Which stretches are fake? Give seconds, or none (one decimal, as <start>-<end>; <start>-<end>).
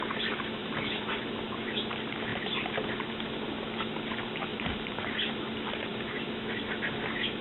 0.6-1.2; 4.5-5.2